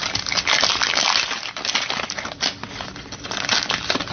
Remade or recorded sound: recorded